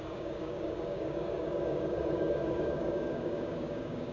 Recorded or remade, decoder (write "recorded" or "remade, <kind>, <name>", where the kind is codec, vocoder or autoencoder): remade, codec, DAC